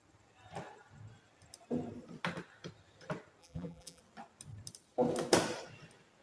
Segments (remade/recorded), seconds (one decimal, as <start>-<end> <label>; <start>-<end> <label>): 0.0-3.4 recorded; 3.4-4.0 remade; 4.0-6.2 recorded